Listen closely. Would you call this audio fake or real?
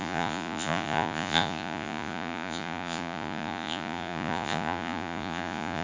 fake